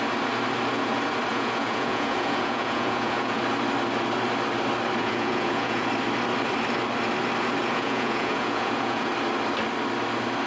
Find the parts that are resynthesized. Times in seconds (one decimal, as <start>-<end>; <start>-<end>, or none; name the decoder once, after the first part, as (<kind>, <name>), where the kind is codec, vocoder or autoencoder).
1.3-3.4 (vocoder, Vocos); 5.0-5.9; 7.6-9.1